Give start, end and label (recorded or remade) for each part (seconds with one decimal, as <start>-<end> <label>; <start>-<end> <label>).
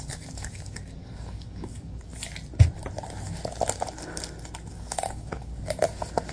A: 0.0-2.1 remade; 2.1-4.7 recorded; 4.7-5.5 remade; 5.5-6.3 recorded